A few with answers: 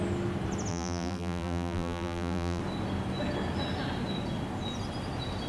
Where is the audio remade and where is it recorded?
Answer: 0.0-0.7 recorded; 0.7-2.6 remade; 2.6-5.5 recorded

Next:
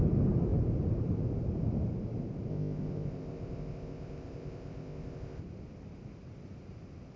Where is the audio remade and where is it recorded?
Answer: 0.0-2.5 recorded; 2.5-5.4 remade; 5.4-7.2 recorded

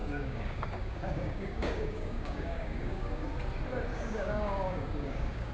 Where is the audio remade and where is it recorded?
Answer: 0.0-3.3 remade; 3.3-3.9 recorded; 3.9-5.5 remade

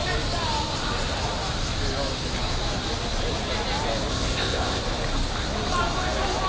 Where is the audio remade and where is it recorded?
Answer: 0.0-4.1 recorded; 4.1-4.8 remade; 4.8-6.5 recorded

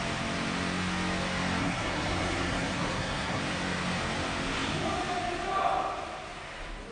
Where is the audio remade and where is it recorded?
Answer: 0.0-1.6 recorded; 1.6-3.4 remade; 3.4-6.9 recorded

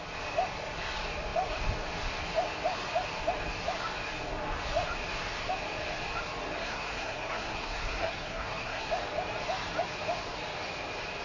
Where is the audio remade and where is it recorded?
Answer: 0.0-6.6 recorded; 6.6-8.9 remade; 8.9-11.2 recorded